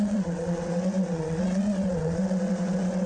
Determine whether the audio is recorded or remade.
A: remade